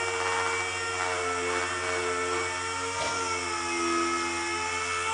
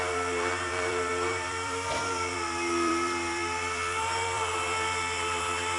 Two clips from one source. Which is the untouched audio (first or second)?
first